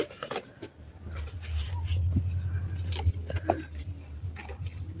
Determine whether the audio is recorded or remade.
recorded